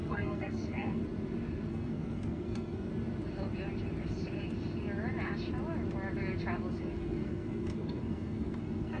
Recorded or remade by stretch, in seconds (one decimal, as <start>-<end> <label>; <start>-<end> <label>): 0.0-1.0 remade; 1.0-1.7 recorded; 1.7-2.9 remade; 2.9-6.8 recorded; 6.8-9.0 remade